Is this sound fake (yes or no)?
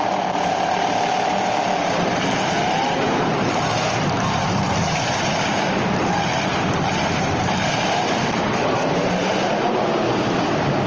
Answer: yes